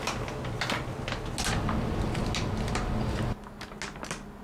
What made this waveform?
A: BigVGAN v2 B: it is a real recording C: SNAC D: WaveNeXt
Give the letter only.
B